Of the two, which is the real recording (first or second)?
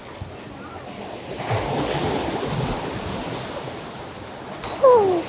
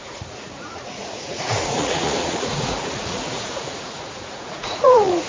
first